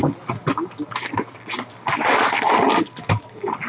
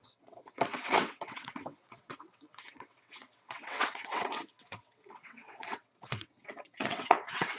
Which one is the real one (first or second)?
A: first